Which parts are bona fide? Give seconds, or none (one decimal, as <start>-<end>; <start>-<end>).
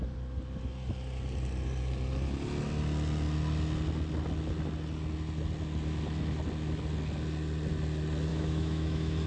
0.0-8.3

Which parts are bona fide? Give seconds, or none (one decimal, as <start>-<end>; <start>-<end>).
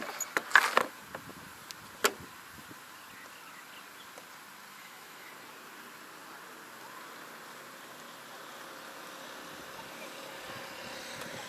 0.0-4.7; 5.3-11.5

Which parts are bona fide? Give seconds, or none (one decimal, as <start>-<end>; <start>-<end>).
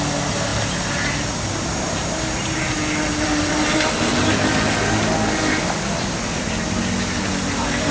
0.0-7.9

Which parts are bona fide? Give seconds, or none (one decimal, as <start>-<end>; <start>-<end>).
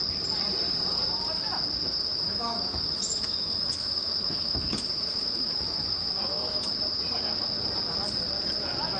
0.0-2.1; 6.7-9.0